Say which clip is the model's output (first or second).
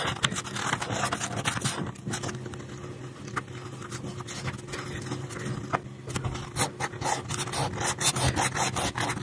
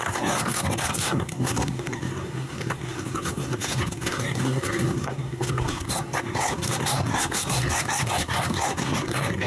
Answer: second